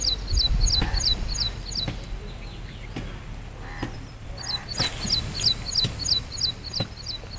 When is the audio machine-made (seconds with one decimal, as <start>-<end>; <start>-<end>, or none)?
none